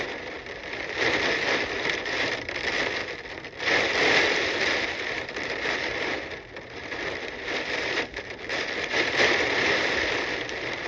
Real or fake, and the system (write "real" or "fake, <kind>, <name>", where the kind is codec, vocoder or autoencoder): fake, vocoder, BigVGAN v2